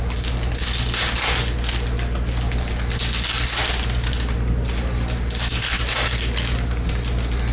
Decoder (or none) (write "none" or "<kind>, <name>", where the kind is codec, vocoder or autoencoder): none